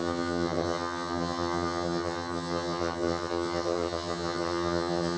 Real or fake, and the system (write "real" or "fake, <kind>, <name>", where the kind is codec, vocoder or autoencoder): fake, vocoder, HiFi-GAN